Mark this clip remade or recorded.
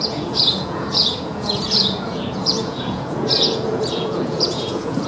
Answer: remade